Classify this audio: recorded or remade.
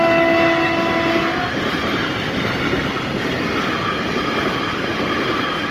recorded